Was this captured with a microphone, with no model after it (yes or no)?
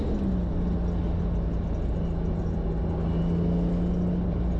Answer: yes